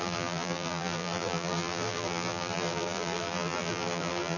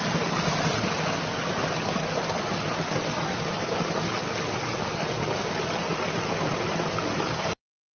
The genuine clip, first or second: second